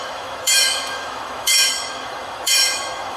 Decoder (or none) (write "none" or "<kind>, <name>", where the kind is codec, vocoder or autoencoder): autoencoder, DAC-VAE